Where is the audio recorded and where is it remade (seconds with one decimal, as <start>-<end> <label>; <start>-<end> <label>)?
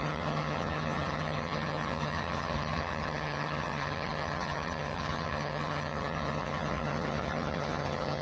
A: 0.0-8.2 remade